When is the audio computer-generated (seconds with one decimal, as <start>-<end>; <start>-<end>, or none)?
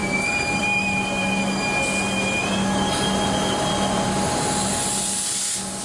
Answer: none